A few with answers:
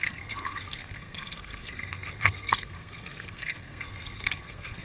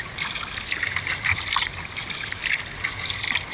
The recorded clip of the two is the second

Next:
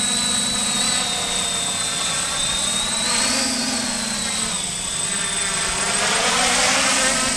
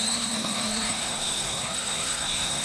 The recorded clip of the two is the first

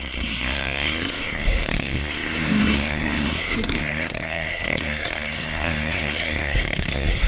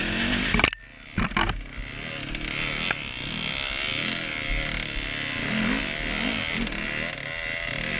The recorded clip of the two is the second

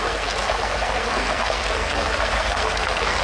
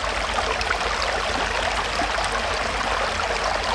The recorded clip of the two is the second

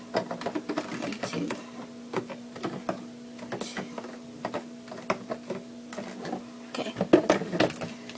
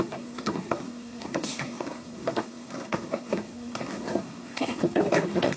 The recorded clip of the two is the first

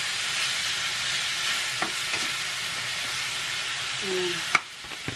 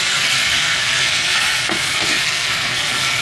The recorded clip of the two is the first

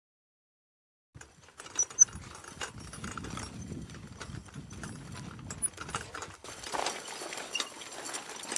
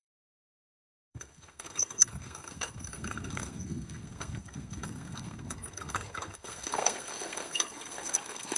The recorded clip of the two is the first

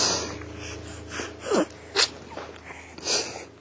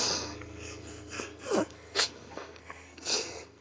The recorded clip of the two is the first